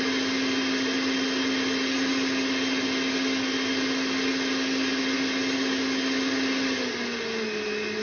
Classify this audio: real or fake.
real